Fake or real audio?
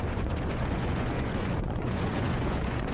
fake